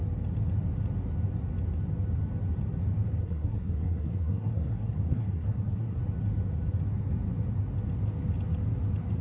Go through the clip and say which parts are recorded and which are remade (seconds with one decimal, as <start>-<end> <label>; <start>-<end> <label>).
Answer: 0.0-3.2 recorded; 3.2-6.0 remade; 6.0-9.2 recorded